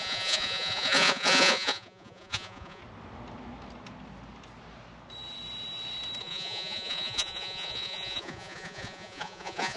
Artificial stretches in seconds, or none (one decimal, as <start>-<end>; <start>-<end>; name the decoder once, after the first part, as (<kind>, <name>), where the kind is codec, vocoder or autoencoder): 0.0-2.8 (vocoder, Vocos); 6.2-9.8